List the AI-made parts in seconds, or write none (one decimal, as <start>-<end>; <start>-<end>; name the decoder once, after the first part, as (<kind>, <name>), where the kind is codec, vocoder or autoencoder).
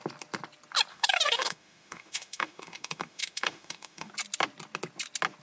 0.9-4.1 (autoencoder, DAC-VAE)